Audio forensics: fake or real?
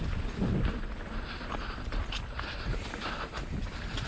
real